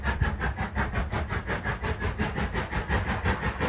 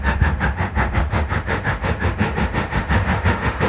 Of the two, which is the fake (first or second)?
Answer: second